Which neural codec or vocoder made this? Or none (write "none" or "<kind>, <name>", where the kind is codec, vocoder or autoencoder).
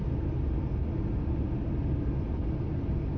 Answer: none